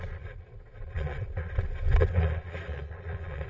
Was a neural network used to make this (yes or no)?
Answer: yes